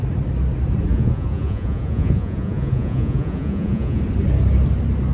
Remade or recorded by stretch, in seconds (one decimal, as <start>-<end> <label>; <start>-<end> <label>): 0.0-0.9 recorded; 0.9-4.0 remade; 4.0-5.1 recorded

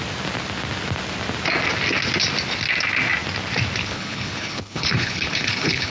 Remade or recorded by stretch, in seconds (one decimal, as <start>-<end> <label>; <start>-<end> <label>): 0.0-3.8 recorded; 3.8-5.9 remade

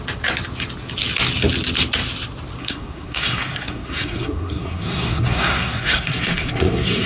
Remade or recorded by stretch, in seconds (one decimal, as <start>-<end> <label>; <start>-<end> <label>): 0.0-2.6 recorded; 2.6-7.1 remade